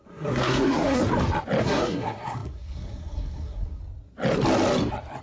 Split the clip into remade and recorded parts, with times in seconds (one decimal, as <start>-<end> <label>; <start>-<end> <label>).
0.0-1.0 remade; 1.0-1.6 recorded; 1.6-3.8 remade; 3.8-5.2 recorded